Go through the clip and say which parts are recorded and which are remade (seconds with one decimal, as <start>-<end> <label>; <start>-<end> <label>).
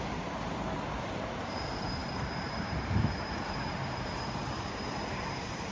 0.0-5.7 remade